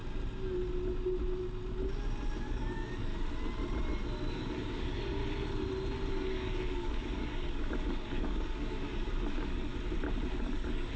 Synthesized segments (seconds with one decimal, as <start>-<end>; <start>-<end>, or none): 2.4-3.1; 4.3-5.2; 6.1-9.7; 10.4-11.0